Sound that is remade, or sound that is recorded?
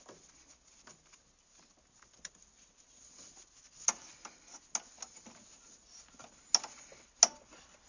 recorded